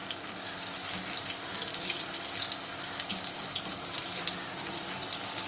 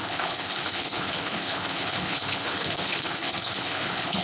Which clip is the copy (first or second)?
second